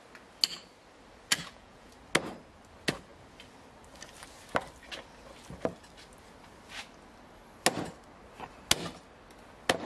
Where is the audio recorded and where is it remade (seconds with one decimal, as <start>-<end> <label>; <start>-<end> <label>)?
0.0-1.3 recorded; 1.3-1.9 remade; 1.9-9.9 recorded